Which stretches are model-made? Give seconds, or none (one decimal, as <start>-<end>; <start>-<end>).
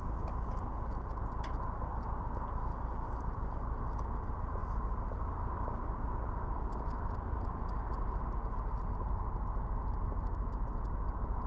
none